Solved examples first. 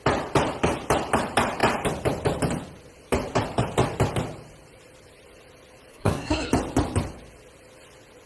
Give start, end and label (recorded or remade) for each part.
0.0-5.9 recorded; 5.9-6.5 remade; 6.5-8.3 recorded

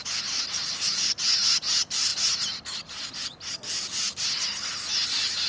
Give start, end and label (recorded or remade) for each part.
0.0-5.5 recorded

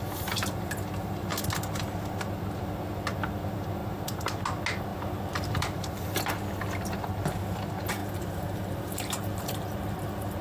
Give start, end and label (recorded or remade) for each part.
0.0-3.8 recorded; 3.8-4.4 remade; 4.4-4.9 recorded; 4.9-6.2 remade; 6.2-8.0 recorded; 8.0-10.4 remade

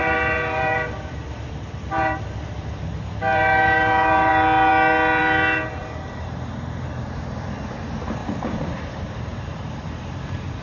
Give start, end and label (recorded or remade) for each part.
0.0-4.3 remade; 4.3-5.8 recorded; 5.8-7.6 remade; 7.6-8.2 recorded; 8.2-10.6 remade

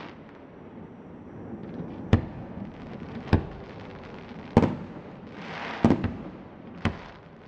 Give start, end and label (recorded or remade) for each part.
0.0-3.9 remade; 3.9-5.2 recorded; 5.2-7.5 remade